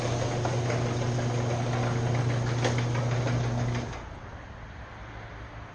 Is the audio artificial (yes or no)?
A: no